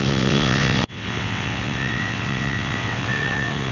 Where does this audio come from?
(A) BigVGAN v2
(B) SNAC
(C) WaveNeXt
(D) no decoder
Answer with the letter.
C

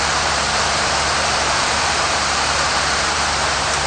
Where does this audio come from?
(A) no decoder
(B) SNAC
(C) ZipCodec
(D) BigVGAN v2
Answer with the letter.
D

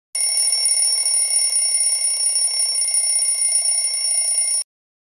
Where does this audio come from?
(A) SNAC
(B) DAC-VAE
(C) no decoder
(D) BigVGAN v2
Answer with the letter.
C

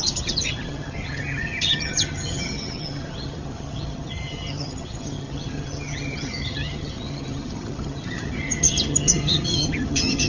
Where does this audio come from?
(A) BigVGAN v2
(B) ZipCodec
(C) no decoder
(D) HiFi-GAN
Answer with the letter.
D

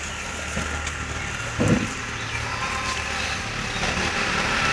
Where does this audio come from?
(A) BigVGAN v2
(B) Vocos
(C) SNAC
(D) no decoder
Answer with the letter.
D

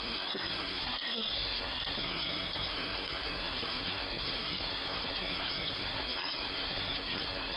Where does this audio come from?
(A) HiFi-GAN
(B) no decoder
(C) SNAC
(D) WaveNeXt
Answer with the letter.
C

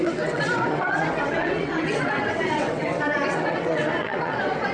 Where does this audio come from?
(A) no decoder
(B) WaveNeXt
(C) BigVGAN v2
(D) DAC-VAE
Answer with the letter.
B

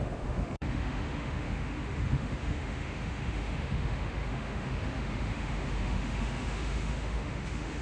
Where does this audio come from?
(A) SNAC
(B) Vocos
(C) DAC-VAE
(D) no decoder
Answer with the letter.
C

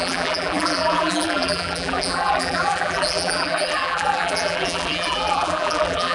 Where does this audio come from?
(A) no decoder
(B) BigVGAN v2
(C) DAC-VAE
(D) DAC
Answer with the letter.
B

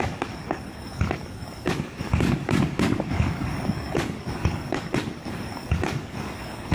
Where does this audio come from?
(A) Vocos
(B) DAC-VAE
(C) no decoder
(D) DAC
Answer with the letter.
D